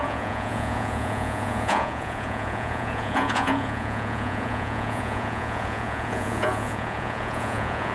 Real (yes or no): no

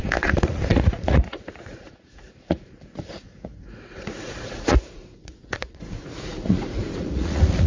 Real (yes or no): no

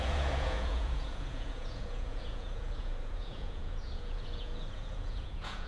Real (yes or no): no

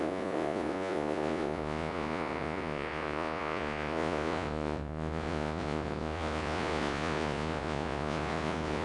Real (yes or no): no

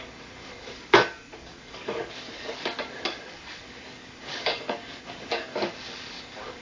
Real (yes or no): no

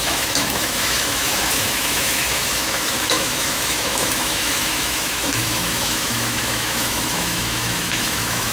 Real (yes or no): no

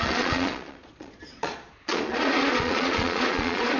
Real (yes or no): no